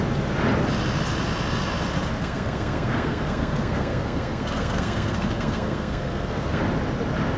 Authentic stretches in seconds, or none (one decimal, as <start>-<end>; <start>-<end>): 0.0-2.2; 6.6-7.4